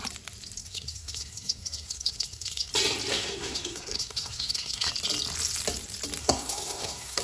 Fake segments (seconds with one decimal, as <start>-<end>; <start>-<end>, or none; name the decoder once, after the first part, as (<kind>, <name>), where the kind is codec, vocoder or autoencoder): 0.6-2.7 (codec, SNAC); 3.1-4.9; 6.2-7.2